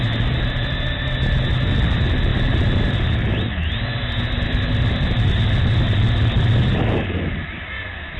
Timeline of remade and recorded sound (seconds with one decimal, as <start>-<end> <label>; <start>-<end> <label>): 0.0-8.2 recorded